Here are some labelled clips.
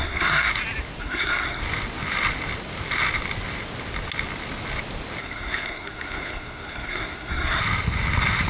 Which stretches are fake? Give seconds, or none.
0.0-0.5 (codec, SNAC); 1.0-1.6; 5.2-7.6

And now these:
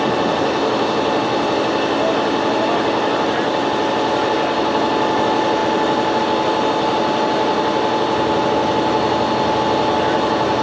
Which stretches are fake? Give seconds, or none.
none

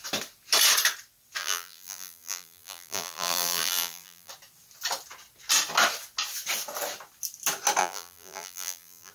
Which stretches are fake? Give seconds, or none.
1.4-4.3 (vocoder, BigVGAN v2); 7.8-9.1

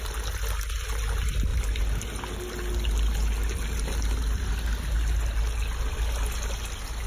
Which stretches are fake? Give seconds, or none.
none

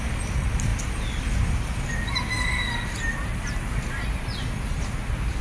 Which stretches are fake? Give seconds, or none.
0.0-0.7 (vocoder, BigVGAN v2); 3.9-5.4